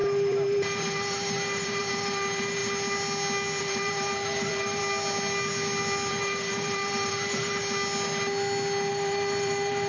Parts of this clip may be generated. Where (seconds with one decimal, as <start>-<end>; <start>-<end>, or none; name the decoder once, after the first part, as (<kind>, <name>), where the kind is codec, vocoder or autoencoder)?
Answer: 0.0-2.6 (vocoder, BigVGAN v2); 3.6-4.8; 6.1-7.6; 8.9-9.9